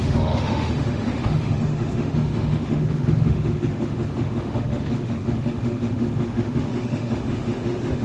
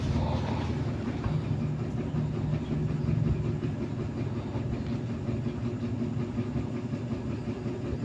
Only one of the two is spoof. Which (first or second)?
first